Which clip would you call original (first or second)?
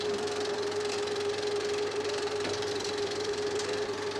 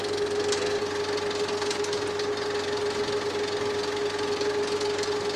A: second